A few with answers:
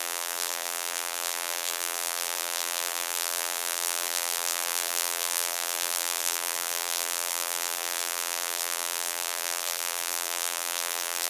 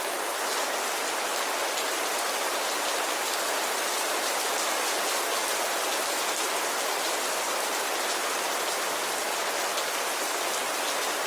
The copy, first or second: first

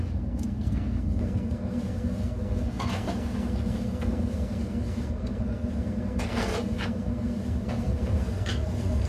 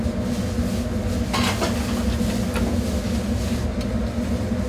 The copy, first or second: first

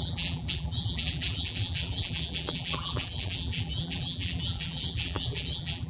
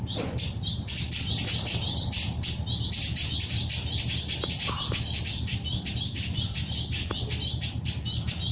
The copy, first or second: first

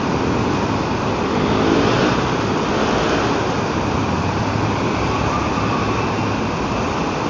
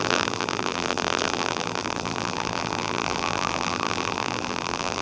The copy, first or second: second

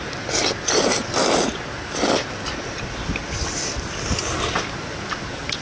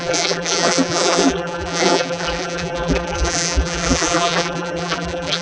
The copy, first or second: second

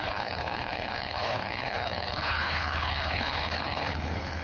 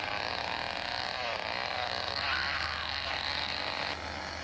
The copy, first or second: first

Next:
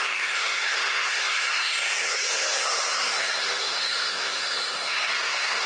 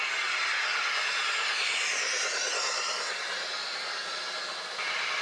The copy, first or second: first